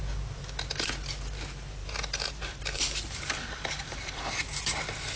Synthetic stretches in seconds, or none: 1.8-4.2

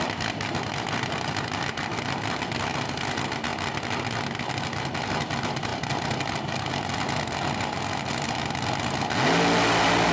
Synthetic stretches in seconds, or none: none

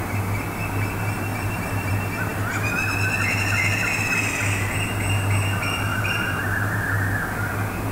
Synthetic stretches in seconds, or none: 1.3-1.9; 5.9-6.8